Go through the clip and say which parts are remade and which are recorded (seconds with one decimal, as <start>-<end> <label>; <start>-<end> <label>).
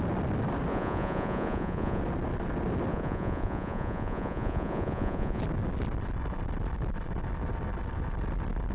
0.0-0.7 recorded; 0.7-2.0 remade; 2.0-2.9 recorded; 2.9-5.4 remade; 5.4-8.7 recorded